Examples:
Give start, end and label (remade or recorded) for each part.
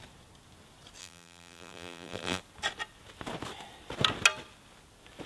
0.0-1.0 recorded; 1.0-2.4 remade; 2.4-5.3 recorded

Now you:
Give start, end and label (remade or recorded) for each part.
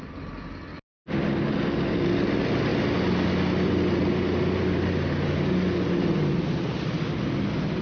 0.0-7.8 recorded